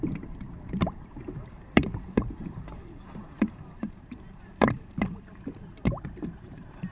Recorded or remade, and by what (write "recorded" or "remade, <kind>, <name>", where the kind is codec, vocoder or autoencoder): remade, vocoder, BigVGAN v2